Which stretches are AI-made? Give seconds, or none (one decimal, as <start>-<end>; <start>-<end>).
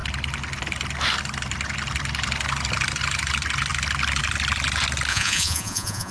5.1-6.1